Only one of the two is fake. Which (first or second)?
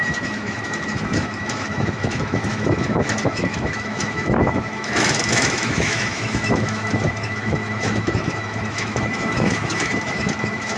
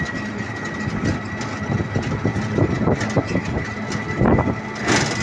first